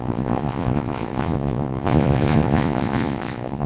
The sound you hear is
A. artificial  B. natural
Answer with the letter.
A